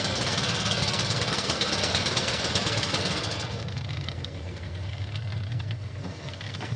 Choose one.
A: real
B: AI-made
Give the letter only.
B